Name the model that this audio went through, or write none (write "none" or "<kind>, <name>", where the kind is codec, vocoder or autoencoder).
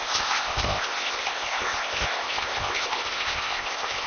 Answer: codec, ZipCodec